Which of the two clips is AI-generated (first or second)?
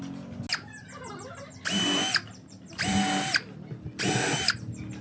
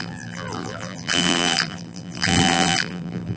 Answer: second